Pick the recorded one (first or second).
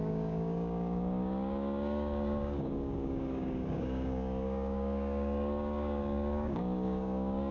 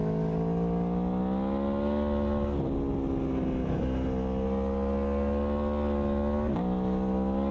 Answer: second